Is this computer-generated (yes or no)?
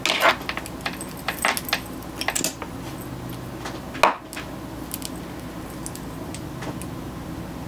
no